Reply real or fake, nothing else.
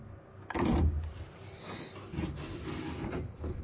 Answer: real